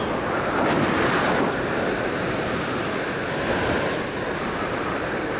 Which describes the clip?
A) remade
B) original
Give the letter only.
B